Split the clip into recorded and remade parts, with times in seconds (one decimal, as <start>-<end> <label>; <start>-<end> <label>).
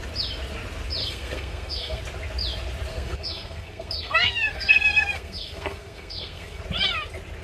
0.0-1.0 recorded; 1.0-2.0 remade; 2.0-2.9 recorded; 2.9-6.6 remade; 6.6-7.4 recorded